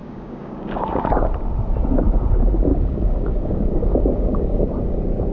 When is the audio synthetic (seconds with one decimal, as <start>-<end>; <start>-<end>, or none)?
0.0-1.1; 2.7-4.6